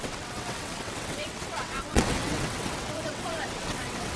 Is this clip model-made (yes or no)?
yes